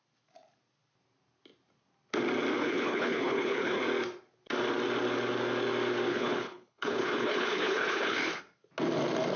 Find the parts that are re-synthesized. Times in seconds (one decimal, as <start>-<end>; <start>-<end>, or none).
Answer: 2.6-3.8; 6.1-8.4